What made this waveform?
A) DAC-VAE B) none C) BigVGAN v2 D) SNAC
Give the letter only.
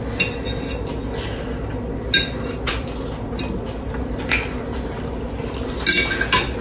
B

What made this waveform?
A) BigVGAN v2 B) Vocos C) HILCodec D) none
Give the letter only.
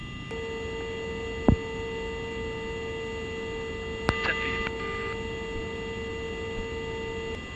D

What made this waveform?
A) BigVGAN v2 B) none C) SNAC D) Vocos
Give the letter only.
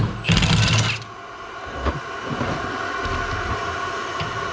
B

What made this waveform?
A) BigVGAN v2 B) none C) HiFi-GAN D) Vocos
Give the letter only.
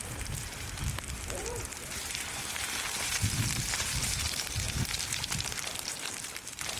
A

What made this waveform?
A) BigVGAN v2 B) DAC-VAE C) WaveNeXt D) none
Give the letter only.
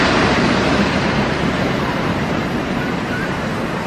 A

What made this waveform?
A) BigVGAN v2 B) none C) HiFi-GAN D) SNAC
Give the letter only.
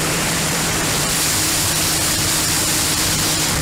A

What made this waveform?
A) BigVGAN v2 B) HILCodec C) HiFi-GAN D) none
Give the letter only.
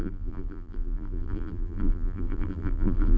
A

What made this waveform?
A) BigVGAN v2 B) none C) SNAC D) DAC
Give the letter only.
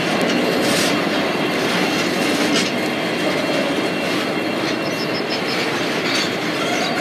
B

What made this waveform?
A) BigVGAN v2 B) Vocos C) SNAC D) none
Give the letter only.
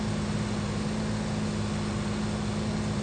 D